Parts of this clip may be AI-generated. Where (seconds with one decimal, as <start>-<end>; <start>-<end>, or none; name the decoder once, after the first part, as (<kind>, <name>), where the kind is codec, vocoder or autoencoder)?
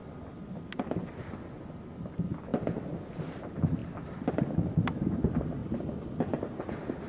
3.8-4.3 (vocoder, BigVGAN v2)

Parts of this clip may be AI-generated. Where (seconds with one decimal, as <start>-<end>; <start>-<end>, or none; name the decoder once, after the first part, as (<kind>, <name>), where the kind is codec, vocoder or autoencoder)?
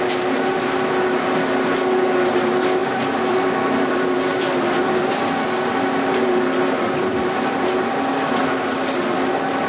2.8-7.7 (vocoder, BigVGAN v2)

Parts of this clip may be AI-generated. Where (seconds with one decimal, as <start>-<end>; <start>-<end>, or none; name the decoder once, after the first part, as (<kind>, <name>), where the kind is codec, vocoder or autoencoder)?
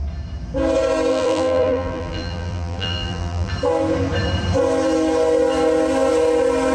1.1-3.5 (vocoder, BigVGAN v2)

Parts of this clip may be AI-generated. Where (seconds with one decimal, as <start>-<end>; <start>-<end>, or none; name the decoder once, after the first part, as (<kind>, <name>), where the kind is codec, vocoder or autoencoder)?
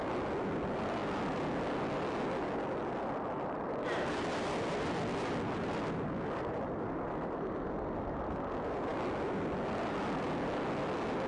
none